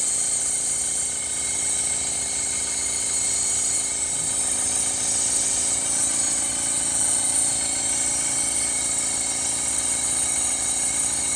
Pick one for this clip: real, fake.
fake